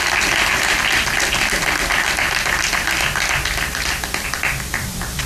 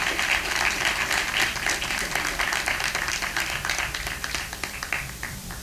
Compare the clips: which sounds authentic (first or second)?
first